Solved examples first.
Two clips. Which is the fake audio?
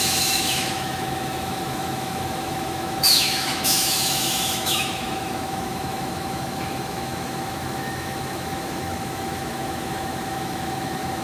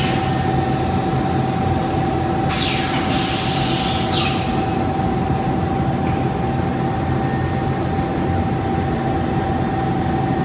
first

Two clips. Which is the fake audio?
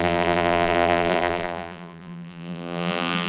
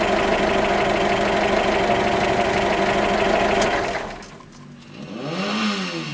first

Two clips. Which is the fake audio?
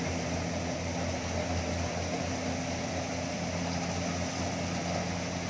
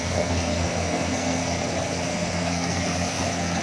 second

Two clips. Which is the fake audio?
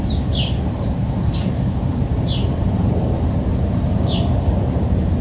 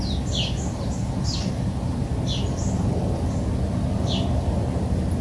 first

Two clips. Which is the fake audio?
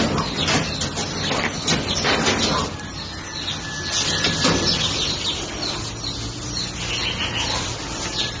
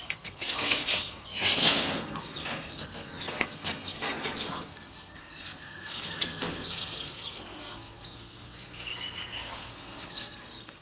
second